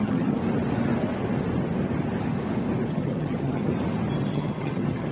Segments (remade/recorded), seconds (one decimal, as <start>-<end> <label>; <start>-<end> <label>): 0.0-0.4 remade; 0.4-2.9 recorded; 2.9-3.7 remade; 3.7-4.3 recorded; 4.3-5.1 remade